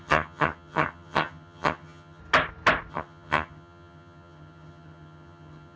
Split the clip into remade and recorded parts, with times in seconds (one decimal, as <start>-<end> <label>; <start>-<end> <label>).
0.0-2.2 remade; 2.2-2.9 recorded; 2.9-5.8 remade